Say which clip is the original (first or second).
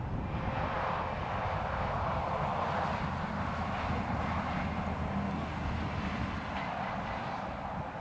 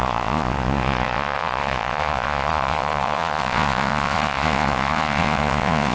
first